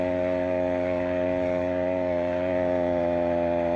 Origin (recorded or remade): recorded